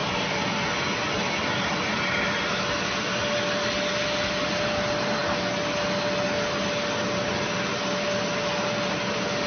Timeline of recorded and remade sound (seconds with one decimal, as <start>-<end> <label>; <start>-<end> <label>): 0.0-9.5 recorded